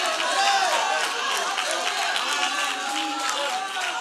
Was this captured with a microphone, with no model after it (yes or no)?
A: yes